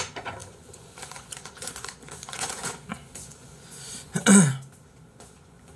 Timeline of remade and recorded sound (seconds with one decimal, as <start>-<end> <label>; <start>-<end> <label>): 0.0-4.3 remade; 4.3-5.1 recorded; 5.1-5.8 remade